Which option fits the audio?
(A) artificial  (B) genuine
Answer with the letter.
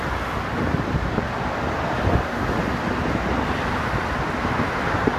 B